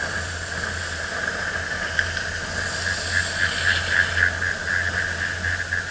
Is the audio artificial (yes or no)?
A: no